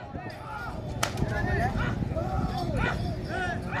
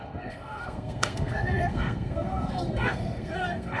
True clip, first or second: first